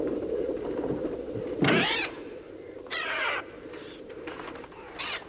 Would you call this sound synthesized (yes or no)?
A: yes